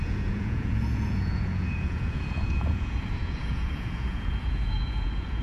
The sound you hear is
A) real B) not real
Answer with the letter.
B